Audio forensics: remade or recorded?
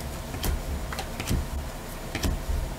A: recorded